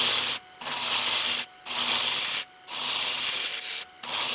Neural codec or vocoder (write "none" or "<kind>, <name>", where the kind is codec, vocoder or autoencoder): none